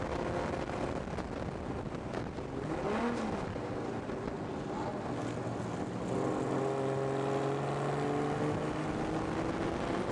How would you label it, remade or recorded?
recorded